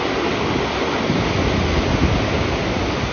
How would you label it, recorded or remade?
recorded